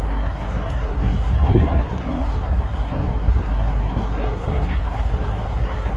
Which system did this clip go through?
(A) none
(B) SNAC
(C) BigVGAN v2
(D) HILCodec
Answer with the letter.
B